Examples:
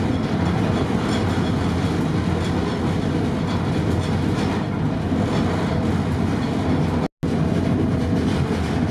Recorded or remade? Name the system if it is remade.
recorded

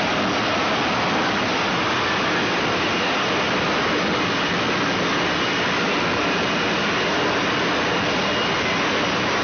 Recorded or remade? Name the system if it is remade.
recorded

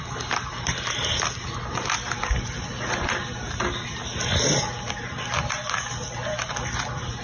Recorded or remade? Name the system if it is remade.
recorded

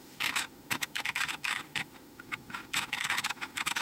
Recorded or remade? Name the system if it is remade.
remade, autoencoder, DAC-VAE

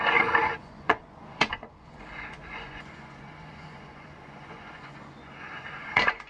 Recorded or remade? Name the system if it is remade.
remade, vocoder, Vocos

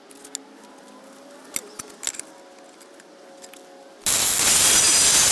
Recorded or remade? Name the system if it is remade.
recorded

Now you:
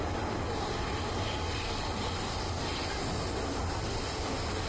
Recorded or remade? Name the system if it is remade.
recorded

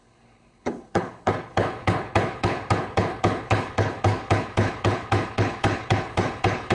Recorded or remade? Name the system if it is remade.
remade, codec, HILCodec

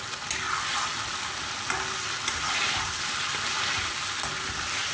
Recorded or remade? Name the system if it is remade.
recorded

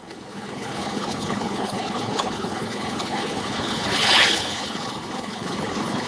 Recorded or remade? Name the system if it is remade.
remade, codec, HILCodec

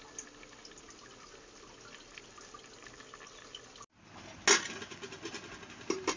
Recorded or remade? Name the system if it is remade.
recorded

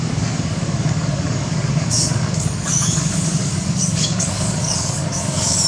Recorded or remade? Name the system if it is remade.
remade, codec, DAC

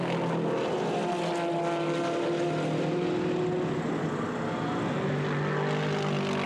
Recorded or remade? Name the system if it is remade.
recorded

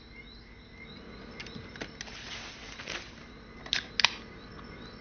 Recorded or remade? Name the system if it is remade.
recorded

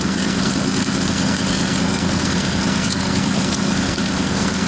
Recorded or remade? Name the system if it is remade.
remade, codec, SNAC